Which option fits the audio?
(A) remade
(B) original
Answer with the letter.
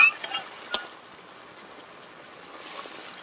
B